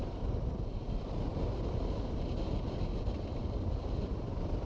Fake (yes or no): no